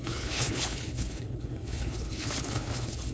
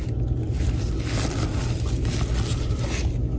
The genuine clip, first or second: second